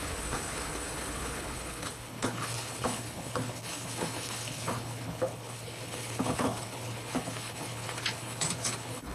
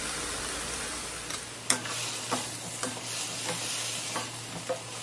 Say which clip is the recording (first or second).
second